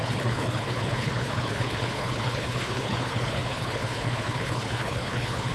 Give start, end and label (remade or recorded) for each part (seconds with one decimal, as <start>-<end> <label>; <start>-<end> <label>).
0.0-5.5 remade